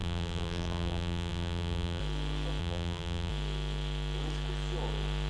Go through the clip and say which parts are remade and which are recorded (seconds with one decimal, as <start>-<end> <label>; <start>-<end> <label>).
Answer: 0.0-2.0 remade; 2.0-2.6 recorded; 2.6-3.3 remade; 3.3-5.3 recorded